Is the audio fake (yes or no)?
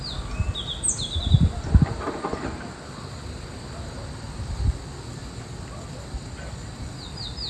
no